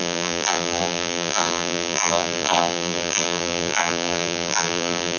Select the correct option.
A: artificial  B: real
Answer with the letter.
A